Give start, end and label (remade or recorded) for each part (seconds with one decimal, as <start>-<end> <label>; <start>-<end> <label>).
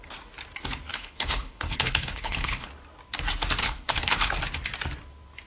0.0-0.9 recorded; 0.9-2.7 remade; 2.7-3.6 recorded; 3.6-4.3 remade; 4.3-5.5 recorded